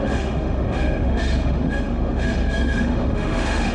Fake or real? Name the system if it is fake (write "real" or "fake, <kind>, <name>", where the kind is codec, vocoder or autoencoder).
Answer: fake, autoencoder, DAC-VAE